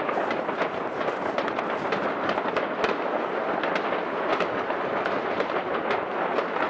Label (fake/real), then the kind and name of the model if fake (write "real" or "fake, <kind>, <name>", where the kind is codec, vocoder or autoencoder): real